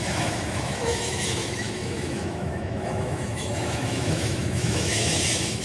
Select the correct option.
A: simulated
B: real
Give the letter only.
A